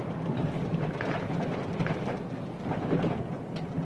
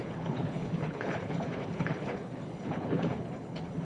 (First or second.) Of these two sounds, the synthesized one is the second